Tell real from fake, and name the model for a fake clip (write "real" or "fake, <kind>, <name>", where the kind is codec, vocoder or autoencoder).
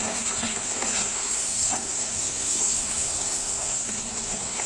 fake, codec, SNAC